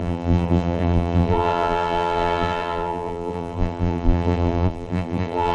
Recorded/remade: remade